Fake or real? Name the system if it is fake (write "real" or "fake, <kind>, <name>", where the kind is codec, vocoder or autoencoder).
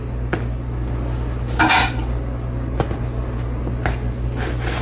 real